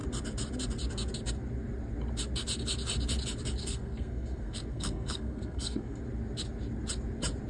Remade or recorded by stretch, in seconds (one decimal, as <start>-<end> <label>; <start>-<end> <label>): 0.0-3.6 recorded; 3.6-6.0 remade; 6.0-7.5 recorded